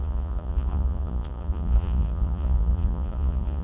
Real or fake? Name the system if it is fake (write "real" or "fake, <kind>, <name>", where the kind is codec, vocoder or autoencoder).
fake, vocoder, Vocos